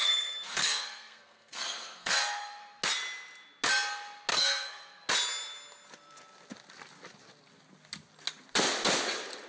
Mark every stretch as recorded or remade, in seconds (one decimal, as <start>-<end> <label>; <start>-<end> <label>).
0.0-2.6 remade; 2.6-4.3 recorded; 4.3-5.1 remade; 5.1-9.5 recorded